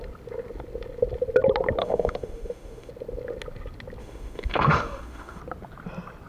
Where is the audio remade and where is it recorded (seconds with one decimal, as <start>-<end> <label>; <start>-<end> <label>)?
0.0-1.8 recorded; 1.8-2.9 remade; 2.9-4.0 recorded; 4.0-5.4 remade; 5.4-6.3 recorded